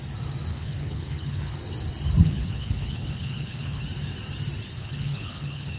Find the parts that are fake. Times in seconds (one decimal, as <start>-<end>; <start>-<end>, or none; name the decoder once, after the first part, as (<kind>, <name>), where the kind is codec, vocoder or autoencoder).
0.5-1.6 (codec, HILCodec); 2.2-3.8; 4.8-5.8